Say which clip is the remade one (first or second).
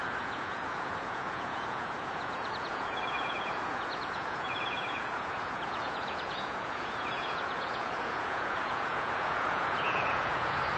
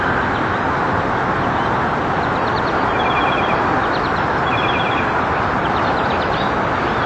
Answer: first